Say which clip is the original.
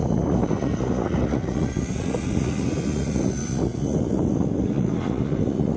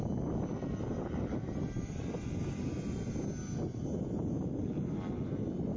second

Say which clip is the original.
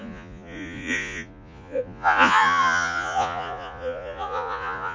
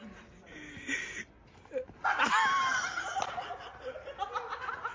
second